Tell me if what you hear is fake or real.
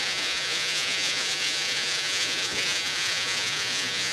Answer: fake